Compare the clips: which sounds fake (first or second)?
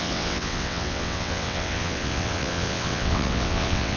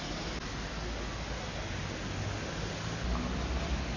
first